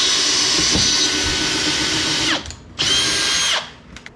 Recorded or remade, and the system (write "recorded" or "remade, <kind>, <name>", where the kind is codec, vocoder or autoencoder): recorded